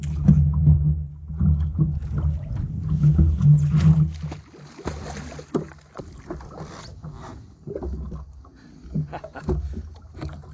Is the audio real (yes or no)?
yes